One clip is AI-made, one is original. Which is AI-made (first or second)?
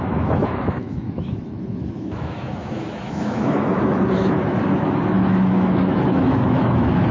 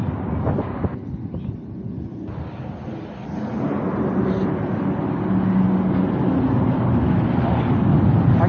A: first